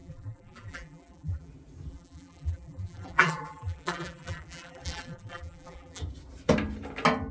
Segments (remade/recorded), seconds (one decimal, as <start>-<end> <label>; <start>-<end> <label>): 0.0-1.5 remade; 1.5-1.9 recorded; 1.9-6.0 remade; 6.0-7.3 recorded